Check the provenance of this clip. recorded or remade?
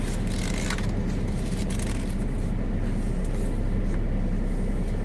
recorded